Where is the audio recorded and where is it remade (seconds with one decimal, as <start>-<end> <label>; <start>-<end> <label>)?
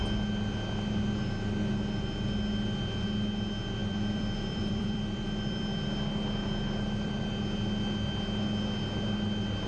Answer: 0.0-3.8 recorded; 3.8-5.6 remade; 5.6-6.4 recorded; 6.4-7.2 remade; 7.2-9.7 recorded